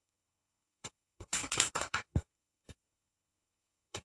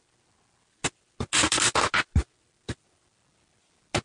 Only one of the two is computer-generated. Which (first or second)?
first